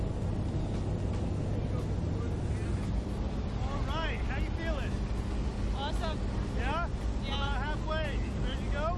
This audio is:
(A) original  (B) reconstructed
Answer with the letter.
A